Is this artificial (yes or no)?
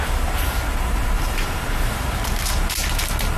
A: no